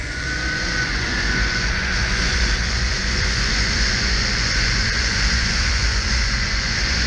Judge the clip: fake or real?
fake